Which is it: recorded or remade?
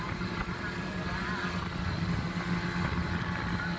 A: recorded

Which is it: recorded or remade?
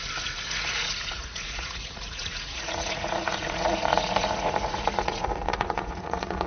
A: remade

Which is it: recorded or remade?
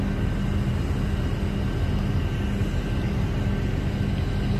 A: recorded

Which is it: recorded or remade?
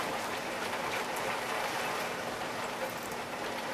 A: remade